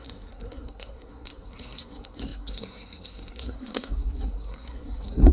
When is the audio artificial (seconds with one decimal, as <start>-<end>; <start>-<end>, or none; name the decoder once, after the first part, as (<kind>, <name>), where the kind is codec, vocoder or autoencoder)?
0.0-5.3 (codec, SNAC)